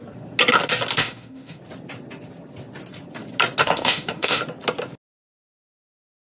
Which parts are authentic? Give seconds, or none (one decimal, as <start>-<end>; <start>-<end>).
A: 0.0-1.0; 1.6-3.6; 4.4-6.3